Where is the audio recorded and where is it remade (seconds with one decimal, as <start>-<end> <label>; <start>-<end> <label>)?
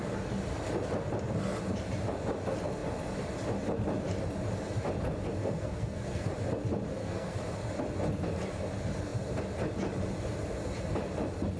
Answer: 0.0-5.4 recorded; 5.4-6.3 remade; 6.3-7.0 recorded; 7.0-7.5 remade; 7.5-11.6 recorded